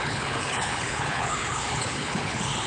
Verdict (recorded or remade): remade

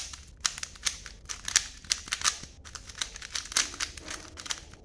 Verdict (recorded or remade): recorded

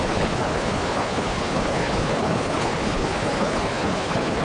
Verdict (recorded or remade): remade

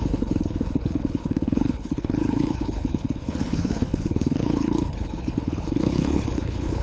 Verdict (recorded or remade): remade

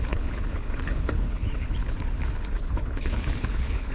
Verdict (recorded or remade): remade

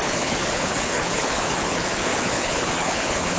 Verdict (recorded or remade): remade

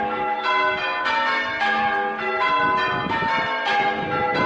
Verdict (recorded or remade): recorded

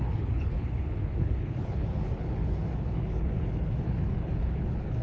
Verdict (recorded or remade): remade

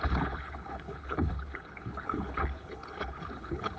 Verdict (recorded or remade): remade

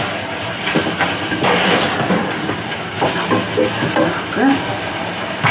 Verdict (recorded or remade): recorded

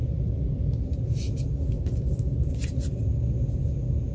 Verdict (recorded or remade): recorded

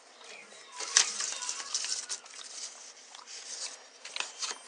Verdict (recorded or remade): recorded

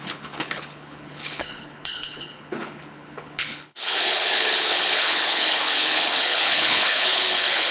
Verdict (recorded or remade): remade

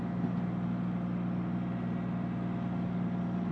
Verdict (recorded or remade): recorded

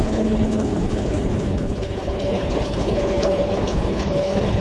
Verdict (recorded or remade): remade